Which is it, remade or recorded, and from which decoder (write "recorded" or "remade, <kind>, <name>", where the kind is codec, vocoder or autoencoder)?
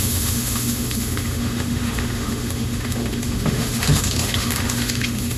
remade, autoencoder, DAC-VAE